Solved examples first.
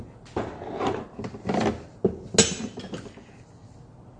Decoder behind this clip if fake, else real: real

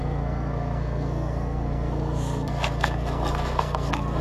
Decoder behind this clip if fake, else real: fake, codec, SNAC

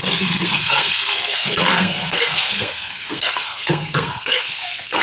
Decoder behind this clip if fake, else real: fake, codec, SNAC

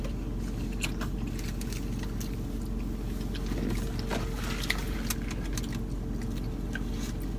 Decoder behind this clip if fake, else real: real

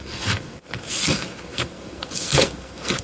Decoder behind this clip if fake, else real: fake, codec, SNAC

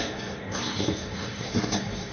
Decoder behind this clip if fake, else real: fake, codec, SNAC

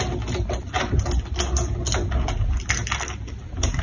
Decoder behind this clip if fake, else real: real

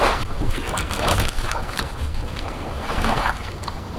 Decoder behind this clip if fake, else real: fake, codec, SNAC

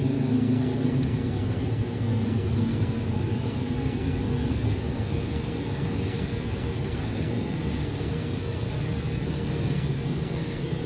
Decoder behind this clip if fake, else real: fake, codec, SNAC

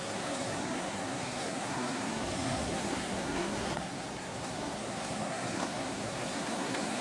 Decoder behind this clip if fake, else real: fake, codec, SNAC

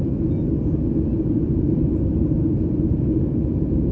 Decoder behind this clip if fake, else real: real